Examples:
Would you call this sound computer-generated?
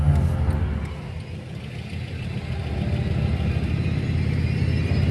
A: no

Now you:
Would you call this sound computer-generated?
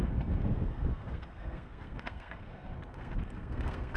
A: yes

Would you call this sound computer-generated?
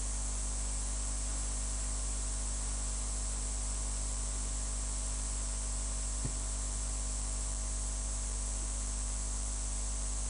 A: yes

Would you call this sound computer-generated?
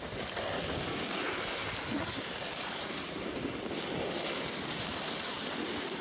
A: no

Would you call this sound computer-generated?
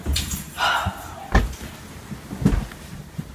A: no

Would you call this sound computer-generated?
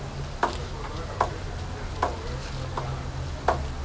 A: no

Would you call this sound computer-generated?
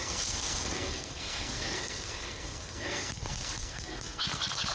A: yes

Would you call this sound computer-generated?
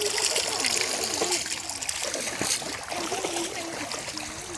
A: no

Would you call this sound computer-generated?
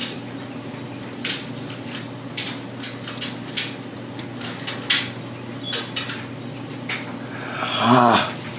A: no